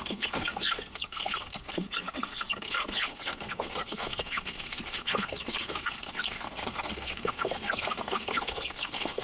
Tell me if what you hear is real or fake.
fake